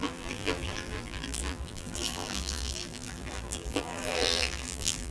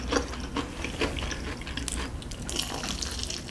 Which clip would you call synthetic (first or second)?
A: first